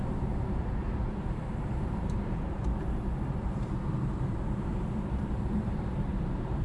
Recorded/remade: remade